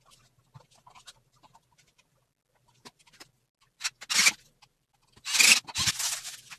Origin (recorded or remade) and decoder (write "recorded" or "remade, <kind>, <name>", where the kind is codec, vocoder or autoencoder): recorded